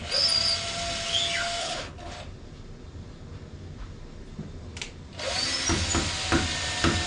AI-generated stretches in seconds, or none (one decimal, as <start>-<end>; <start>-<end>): 1.6-2.1